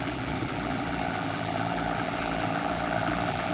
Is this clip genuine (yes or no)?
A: no